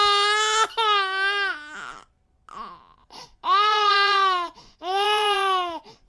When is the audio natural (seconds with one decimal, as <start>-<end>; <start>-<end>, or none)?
0.0-3.0